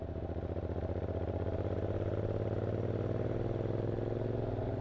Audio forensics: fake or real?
real